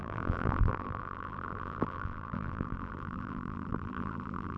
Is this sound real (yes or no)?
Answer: no